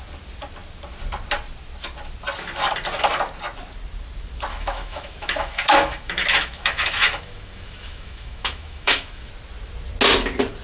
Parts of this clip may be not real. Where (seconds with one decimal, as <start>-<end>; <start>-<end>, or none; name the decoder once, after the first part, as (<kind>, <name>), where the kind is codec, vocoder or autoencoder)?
4.5-9.3 (autoencoder, DAC-VAE)